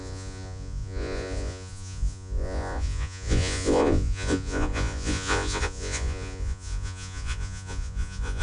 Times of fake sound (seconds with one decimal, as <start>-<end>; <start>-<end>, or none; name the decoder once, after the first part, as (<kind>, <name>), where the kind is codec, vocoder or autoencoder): 0.0-8.4 (vocoder, Vocos)